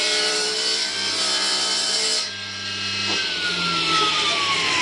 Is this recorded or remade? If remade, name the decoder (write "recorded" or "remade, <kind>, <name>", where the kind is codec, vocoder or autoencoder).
remade, vocoder, BigVGAN v2